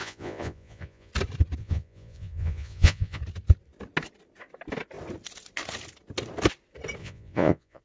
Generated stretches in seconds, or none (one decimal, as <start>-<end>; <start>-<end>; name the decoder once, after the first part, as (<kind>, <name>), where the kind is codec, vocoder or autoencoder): 0.0-1.1 (vocoder, Vocos); 1.6-3.2; 7.0-7.8